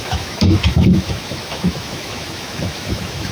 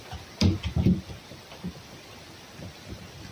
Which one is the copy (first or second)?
first